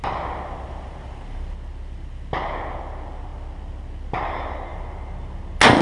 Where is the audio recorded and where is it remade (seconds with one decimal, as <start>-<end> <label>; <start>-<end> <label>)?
0.0-5.8 recorded